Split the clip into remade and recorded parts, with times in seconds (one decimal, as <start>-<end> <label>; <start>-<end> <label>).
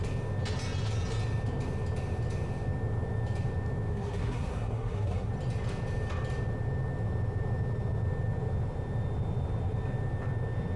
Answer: 0.0-3.9 recorded; 3.9-5.3 remade; 5.3-10.8 recorded